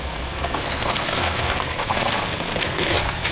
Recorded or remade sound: remade